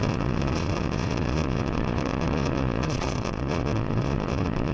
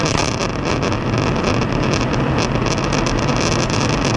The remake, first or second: first